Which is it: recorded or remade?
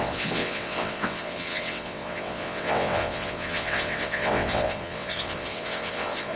remade